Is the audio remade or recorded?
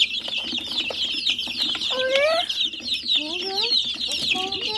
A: recorded